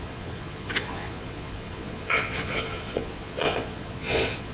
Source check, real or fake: fake